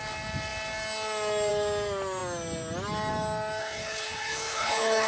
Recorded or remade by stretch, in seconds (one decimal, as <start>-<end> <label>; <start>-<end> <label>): 0.0-3.6 recorded; 3.6-5.1 remade